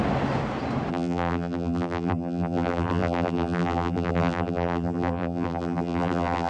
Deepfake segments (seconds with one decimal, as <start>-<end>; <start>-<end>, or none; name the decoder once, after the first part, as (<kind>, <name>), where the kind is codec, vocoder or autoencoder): 0.9-6.5 (vocoder, BigVGAN v2)